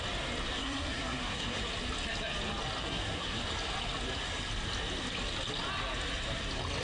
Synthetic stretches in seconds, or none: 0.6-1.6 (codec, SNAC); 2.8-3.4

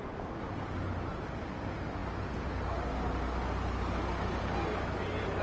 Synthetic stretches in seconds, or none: none

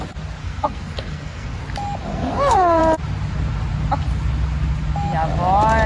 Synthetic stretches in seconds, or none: 0.4-1.6 (codec, SNAC); 2.1-2.8

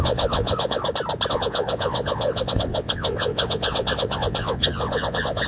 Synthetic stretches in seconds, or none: 0.0-0.8 (vocoder, WaveNeXt); 1.3-5.5

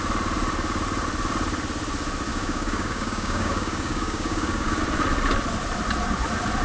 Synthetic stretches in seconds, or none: 2.3-4.8 (codec, DAC)